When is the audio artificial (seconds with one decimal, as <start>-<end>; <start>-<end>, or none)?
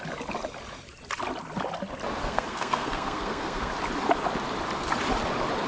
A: 2.2-3.7